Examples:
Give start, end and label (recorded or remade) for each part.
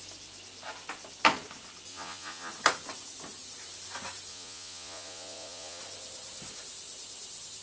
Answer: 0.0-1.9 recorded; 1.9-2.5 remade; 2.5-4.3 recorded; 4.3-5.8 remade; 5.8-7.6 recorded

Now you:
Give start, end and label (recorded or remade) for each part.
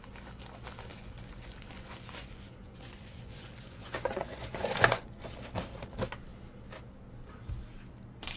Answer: 0.0-0.9 recorded; 0.9-5.3 remade; 5.3-8.4 recorded